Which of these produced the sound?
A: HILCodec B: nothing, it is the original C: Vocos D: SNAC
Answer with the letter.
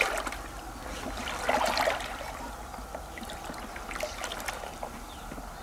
B